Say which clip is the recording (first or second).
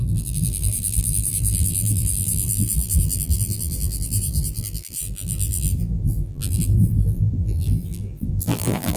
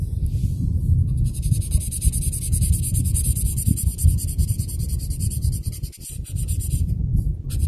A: second